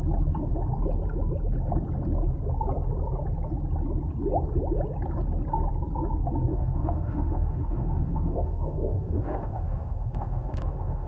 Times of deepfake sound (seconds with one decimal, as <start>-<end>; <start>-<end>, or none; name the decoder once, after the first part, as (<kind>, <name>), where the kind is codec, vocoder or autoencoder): 6.5-11.1 (autoencoder, DAC-VAE)